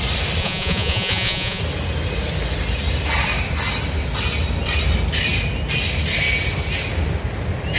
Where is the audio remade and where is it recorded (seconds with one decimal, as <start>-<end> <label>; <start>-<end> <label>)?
0.0-0.4 recorded; 0.4-1.6 remade; 1.6-7.8 recorded